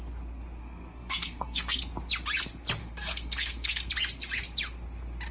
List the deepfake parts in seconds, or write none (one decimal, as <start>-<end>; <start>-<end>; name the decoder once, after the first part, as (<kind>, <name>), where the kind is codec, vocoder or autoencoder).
0.6-1.8 (codec, SNAC); 2.8-3.9